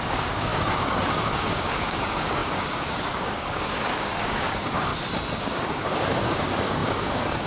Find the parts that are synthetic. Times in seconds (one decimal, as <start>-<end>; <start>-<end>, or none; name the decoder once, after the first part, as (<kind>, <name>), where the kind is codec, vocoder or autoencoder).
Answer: 0.0-4.9 (codec, DAC); 5.4-7.5